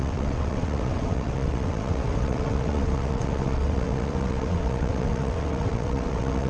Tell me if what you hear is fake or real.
fake